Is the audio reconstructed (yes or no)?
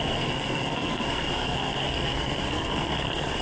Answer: yes